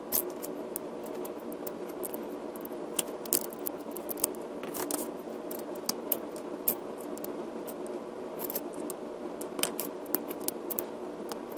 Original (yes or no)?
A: yes